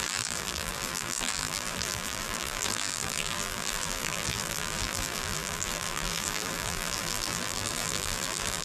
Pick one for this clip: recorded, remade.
remade